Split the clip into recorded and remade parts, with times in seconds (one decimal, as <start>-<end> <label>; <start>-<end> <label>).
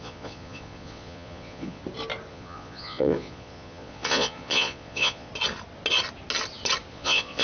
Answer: 0.0-1.8 remade; 1.8-2.3 recorded; 2.3-5.3 remade; 5.3-6.9 recorded; 6.9-7.4 remade